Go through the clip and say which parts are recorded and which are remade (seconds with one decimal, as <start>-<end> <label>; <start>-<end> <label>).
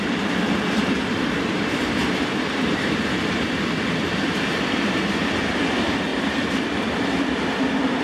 0.0-6.1 remade; 6.1-6.9 recorded; 6.9-8.0 remade